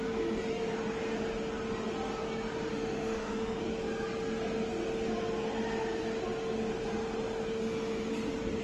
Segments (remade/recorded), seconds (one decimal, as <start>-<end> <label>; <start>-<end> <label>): 0.0-2.7 recorded; 2.7-3.6 remade; 3.6-8.6 recorded